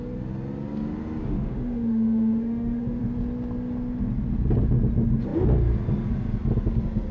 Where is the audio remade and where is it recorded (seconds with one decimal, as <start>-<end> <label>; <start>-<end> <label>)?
0.0-1.2 recorded; 1.2-3.0 remade; 3.0-7.1 recorded